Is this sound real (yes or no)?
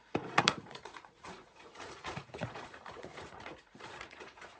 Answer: no